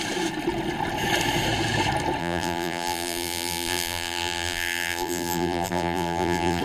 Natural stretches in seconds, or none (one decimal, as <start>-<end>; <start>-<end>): 0.0-2.2